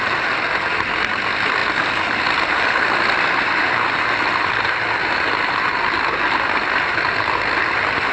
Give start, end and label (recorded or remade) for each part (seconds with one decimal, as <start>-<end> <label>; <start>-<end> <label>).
0.0-8.1 recorded